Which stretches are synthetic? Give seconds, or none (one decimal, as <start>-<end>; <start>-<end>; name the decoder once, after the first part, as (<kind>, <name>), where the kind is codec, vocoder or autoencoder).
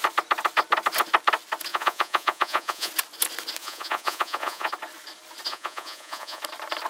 1.7-2.9 (vocoder, Vocos); 3.6-4.7; 5.5-6.4